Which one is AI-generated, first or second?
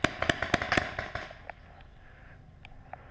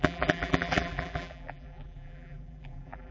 second